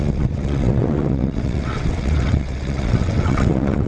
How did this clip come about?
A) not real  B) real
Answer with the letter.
A